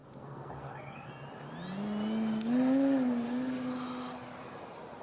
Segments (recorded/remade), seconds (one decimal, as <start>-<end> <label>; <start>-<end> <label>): 0.0-1.1 remade; 1.1-5.0 recorded